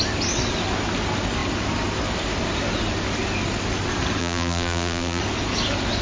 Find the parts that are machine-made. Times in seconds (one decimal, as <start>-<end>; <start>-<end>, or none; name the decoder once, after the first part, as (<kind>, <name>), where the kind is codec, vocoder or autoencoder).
4.2-5.2 (vocoder, BigVGAN v2)